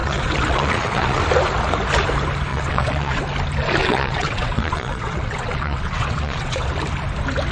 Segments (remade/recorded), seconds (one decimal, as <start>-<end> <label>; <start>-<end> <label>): 0.0-1.2 remade; 1.2-2.5 recorded; 2.5-3.2 remade; 3.2-3.8 recorded; 3.8-6.7 remade; 6.7-7.5 recorded